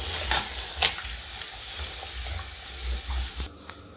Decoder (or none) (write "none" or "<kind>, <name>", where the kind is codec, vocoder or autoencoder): none